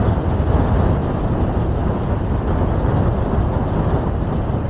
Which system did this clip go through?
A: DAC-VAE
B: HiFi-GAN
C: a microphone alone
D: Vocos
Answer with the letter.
C